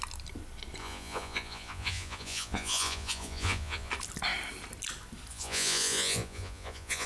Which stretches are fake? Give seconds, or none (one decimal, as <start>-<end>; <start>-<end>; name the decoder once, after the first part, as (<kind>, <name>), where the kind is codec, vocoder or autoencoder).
0.8-3.9 (vocoder, Vocos); 5.3-7.1